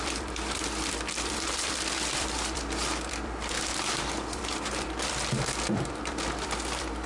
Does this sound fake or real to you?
fake